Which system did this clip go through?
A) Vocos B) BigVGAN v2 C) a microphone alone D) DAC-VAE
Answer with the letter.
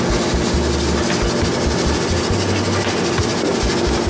C